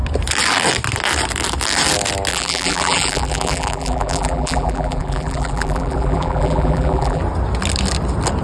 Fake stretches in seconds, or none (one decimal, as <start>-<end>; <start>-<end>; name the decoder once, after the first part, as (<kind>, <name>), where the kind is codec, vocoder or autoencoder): 2.3-7.2 (vocoder, BigVGAN v2)